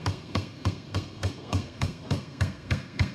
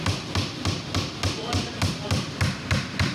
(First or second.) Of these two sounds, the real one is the second